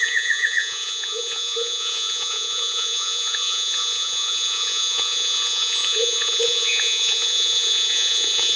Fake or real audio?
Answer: fake